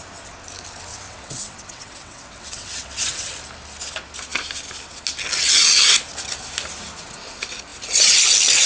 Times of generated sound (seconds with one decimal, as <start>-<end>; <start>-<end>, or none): 0.9-3.3